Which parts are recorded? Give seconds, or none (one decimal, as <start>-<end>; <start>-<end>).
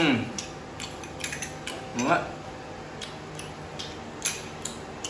0.0-5.1